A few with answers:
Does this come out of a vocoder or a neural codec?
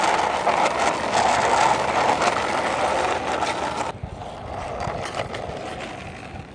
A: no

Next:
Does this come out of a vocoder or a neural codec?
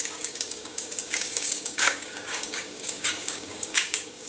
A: yes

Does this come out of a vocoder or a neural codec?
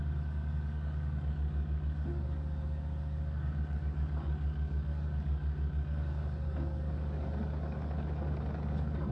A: yes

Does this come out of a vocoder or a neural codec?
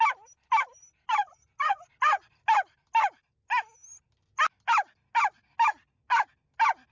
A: no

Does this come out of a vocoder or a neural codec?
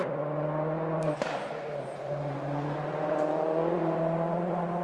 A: no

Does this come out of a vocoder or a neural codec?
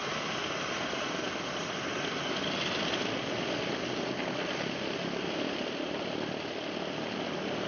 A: no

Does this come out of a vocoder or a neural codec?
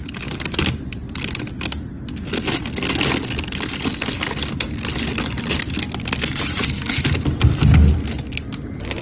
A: no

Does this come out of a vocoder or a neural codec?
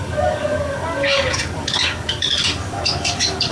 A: yes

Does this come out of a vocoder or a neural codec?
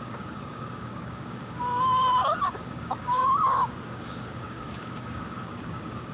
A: yes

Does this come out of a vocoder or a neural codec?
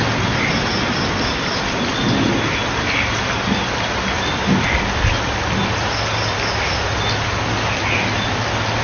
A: no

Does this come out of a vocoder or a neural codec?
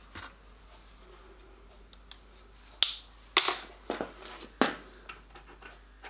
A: no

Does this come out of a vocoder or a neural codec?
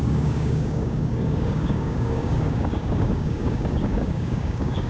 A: yes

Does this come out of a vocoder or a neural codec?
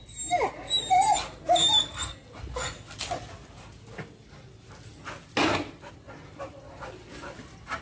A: no